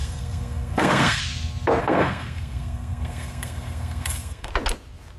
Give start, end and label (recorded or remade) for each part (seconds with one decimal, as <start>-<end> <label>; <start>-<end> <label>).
0.0-1.2 remade; 1.2-1.8 recorded; 1.8-4.5 remade; 4.5-5.2 recorded